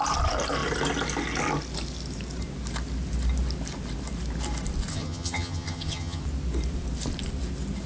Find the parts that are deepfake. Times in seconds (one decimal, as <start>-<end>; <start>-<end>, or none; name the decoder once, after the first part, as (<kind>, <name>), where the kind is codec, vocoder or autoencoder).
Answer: 4.9-6.2 (vocoder, HiFi-GAN)